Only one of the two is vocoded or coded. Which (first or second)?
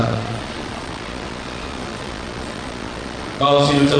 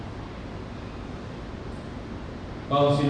first